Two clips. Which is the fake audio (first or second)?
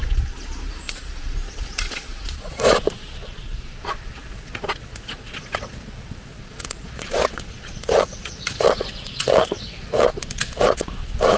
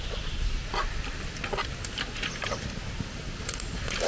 first